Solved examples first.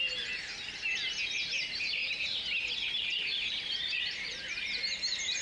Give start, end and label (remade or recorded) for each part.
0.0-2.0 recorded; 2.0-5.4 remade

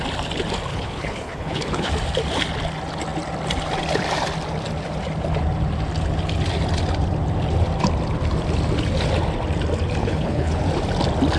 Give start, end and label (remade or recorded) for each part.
0.0-0.7 recorded; 0.7-1.9 remade; 1.9-10.0 recorded; 10.0-10.6 remade; 10.6-11.4 recorded

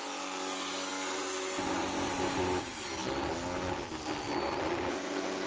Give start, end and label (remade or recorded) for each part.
0.0-5.5 recorded

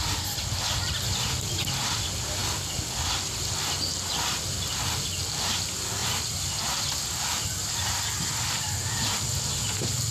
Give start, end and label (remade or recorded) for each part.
0.0-10.1 recorded

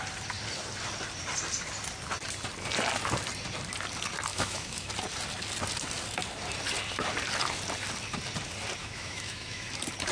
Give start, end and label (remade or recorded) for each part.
0.0-4.3 recorded; 4.3-4.9 remade; 4.9-8.8 recorded; 8.8-9.7 remade; 9.7-10.1 recorded